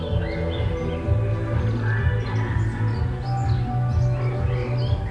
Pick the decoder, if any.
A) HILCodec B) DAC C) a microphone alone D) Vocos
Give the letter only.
C